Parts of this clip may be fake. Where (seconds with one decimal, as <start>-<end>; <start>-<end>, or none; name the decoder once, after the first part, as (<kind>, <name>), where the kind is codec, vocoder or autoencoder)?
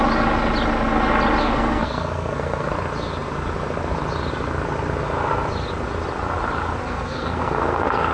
1.4-2.7 (codec, SNAC); 6.8-8.1